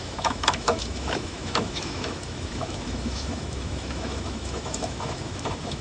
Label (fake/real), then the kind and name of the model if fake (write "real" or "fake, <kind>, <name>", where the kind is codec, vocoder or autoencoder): fake, autoencoder, DAC-VAE